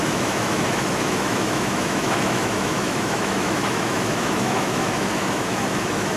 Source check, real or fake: fake